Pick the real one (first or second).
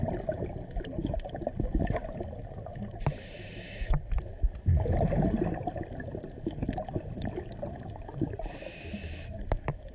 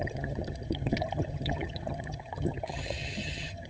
first